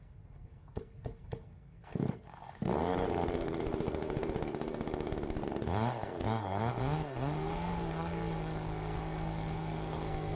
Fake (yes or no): yes